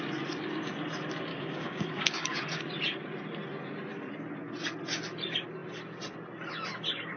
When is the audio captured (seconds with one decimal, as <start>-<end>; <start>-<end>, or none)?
0.0-1.3; 2.6-7.2